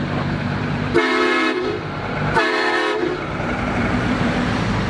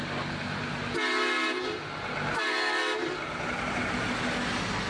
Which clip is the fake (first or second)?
first